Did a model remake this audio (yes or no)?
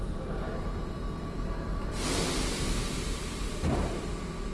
no